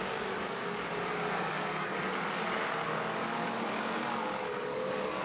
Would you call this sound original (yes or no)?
no